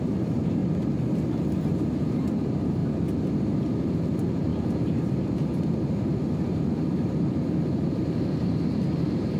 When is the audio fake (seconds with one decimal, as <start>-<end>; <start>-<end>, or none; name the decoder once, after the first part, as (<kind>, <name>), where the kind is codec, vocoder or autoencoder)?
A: 0.0-0.6 (vocoder, BigVGAN v2); 1.6-2.8; 3.4-9.4